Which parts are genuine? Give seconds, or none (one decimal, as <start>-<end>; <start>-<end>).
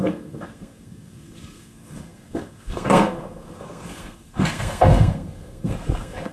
none